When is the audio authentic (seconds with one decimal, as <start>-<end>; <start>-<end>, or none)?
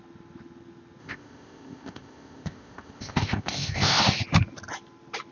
0.0-1.0; 4.0-5.3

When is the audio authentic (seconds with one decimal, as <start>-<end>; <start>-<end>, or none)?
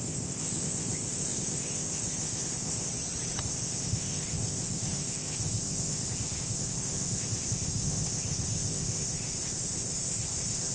2.9-3.4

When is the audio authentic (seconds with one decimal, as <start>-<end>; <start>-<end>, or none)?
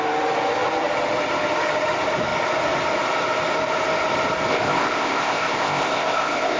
0.0-4.5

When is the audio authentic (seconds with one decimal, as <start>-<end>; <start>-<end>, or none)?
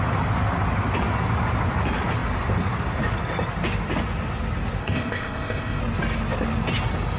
0.0-4.8; 5.8-7.2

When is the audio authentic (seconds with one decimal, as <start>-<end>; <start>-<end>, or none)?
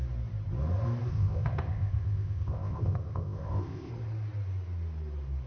0.0-1.1; 3.9-5.5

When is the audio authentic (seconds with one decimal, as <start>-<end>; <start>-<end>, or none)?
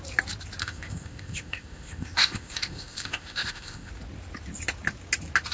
0.0-0.6; 3.9-5.5